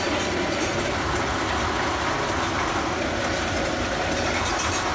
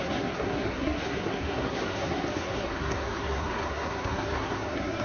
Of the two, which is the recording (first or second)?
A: first